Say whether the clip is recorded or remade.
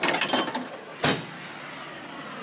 recorded